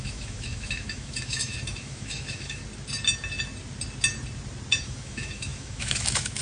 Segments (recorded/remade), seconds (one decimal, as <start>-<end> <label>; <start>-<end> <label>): 0.0-2.6 remade; 2.6-4.8 recorded; 4.8-6.4 remade